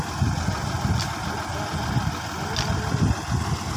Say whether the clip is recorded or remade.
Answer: recorded